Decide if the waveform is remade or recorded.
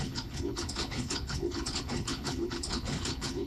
remade